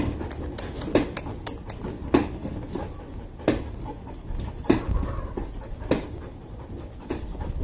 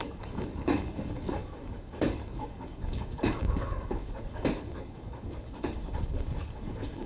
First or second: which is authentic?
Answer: first